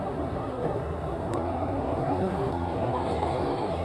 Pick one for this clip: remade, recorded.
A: remade